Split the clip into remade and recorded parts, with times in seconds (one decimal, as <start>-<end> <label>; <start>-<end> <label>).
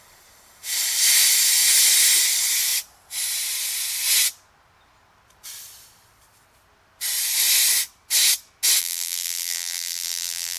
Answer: 0.0-8.8 recorded; 8.8-10.6 remade